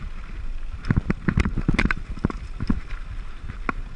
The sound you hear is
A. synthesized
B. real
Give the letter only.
B